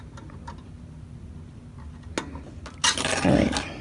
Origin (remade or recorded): recorded